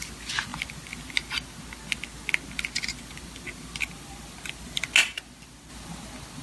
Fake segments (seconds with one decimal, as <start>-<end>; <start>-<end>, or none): none